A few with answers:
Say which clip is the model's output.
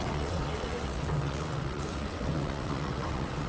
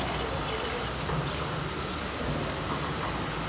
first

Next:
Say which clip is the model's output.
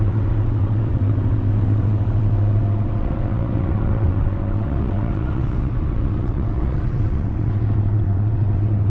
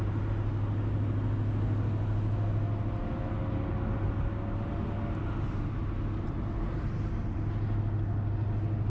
first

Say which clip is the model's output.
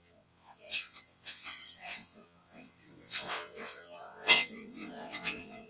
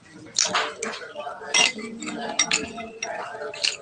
first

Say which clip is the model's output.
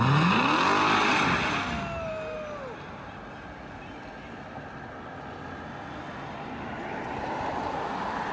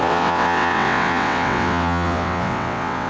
second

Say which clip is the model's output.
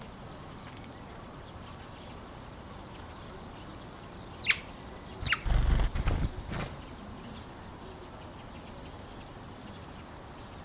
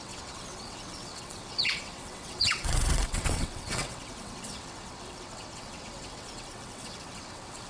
second